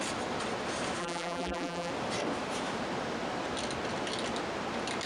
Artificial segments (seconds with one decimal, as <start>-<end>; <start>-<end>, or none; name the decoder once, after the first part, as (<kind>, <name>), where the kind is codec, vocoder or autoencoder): 1.0-1.9 (vocoder, BigVGAN v2)